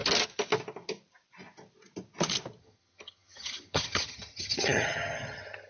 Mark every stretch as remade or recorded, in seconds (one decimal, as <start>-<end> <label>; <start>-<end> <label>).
0.0-2.6 recorded; 2.6-5.7 remade